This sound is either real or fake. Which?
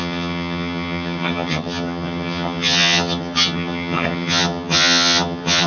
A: fake